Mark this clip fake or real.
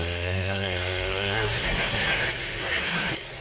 fake